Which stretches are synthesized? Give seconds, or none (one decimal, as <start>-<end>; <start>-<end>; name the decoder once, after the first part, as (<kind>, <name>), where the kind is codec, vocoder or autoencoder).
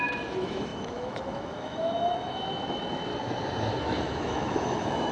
0.0-3.1 (autoencoder, DAC-VAE); 3.8-5.1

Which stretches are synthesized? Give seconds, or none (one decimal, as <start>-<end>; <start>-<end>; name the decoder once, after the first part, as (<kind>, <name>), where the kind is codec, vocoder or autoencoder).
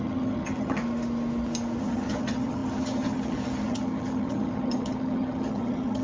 0.0-0.8 (vocoder, HiFi-GAN); 1.8-6.0